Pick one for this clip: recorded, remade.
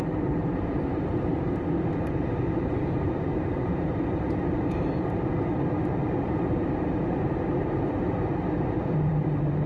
remade